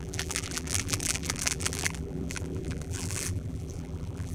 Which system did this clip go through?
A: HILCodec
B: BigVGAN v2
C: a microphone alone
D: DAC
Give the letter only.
B